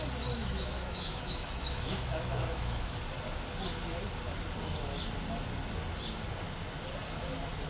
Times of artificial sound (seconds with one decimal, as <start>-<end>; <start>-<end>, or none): 0.4-3.0